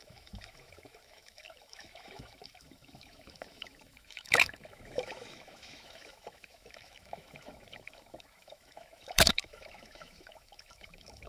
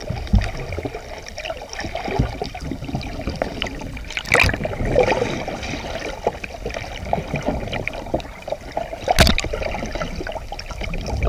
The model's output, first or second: first